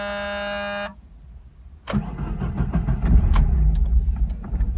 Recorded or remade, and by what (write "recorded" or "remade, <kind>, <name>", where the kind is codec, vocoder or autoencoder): recorded